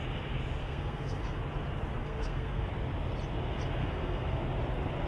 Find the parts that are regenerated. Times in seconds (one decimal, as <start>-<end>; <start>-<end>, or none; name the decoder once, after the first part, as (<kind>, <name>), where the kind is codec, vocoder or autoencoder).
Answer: 0.6-1.4 (codec, SNAC); 2.0-2.7; 3.8-4.4